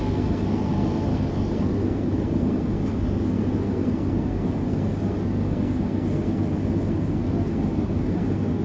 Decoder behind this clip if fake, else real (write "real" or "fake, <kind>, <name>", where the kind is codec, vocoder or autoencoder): fake, codec, SNAC